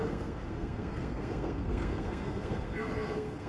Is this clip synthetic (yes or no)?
yes